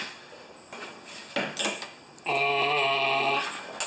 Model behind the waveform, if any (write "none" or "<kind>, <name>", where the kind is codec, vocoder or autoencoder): none